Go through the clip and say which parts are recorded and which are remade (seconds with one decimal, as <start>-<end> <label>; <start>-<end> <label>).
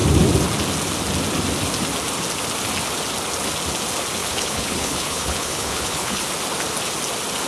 0.0-4.2 recorded; 4.2-6.3 remade; 6.3-7.5 recorded